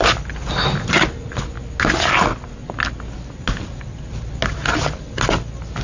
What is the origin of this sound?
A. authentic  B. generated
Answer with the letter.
A